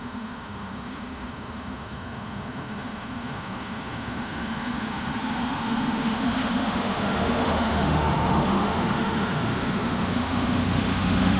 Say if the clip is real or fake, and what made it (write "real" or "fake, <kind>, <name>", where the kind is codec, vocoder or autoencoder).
fake, autoencoder, DAC-VAE